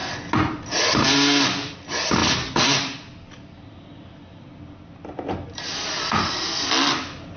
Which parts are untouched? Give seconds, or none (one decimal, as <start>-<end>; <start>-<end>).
0.0-7.4

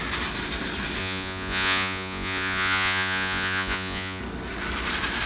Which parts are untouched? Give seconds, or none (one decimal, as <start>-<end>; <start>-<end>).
0.0-1.0; 4.2-5.3

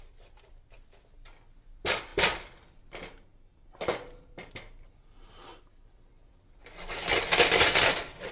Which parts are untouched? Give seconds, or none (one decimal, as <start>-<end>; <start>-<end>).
0.0-8.3

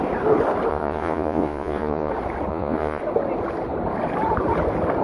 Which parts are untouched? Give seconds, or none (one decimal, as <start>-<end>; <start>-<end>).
0.0-0.7; 2.1-2.5; 3.0-5.0